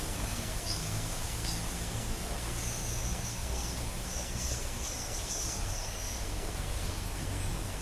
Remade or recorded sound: remade